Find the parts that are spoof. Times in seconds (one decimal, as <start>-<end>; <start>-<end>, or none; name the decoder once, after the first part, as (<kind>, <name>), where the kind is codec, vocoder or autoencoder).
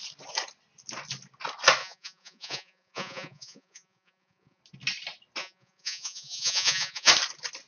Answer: 1.8-4.6 (vocoder, Vocos); 5.4-7.1